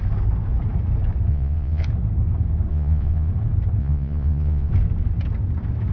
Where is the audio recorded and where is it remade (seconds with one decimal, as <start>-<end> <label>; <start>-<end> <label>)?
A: 0.0-1.3 recorded; 1.3-1.9 remade; 1.9-2.7 recorded; 2.7-3.3 remade; 3.3-3.8 recorded; 3.8-4.7 remade; 4.7-5.9 recorded